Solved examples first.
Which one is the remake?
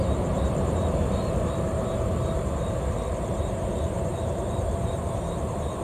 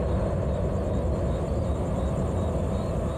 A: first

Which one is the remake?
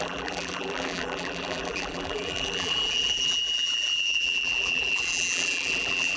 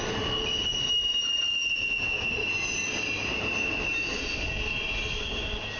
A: first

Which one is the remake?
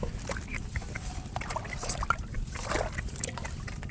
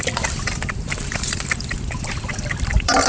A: second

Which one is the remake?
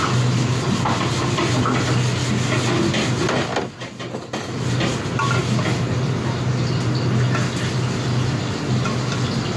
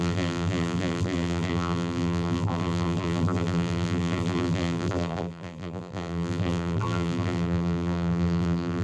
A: second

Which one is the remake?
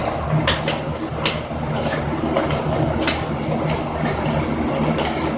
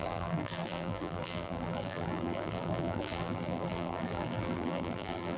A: second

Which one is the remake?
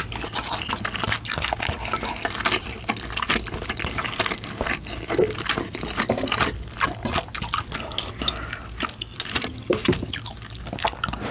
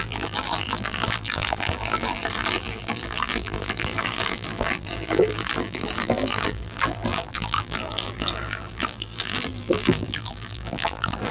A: second